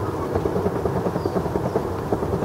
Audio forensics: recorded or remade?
recorded